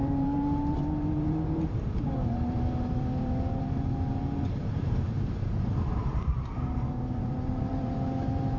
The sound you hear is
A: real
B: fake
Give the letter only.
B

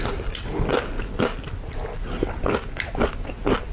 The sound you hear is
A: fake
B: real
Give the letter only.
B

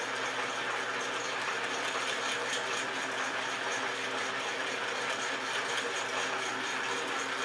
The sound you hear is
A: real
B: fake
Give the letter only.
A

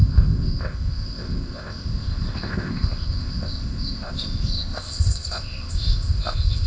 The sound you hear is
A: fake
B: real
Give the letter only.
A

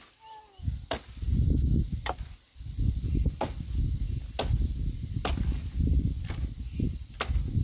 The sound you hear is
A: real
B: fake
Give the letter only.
A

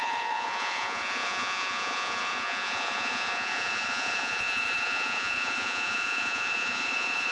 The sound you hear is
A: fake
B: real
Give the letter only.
A